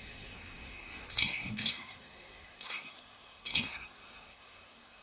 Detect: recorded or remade remade